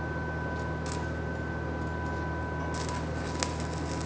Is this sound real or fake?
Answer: real